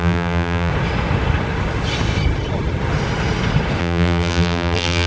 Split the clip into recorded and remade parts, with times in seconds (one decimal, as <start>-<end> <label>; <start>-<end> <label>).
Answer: 0.0-0.7 remade; 0.7-3.8 recorded; 3.8-5.1 remade